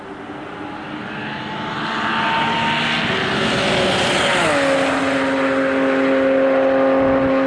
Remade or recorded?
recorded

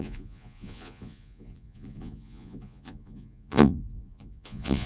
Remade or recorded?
remade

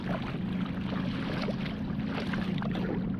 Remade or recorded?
recorded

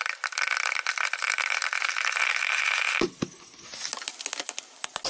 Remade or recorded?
recorded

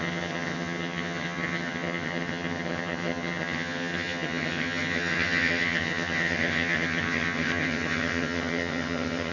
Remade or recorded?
remade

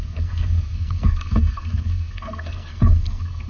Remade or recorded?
remade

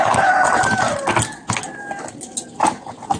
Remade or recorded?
recorded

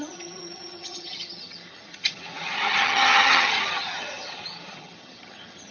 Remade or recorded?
remade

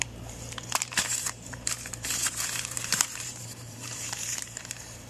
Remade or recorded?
remade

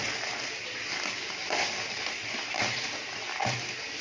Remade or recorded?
recorded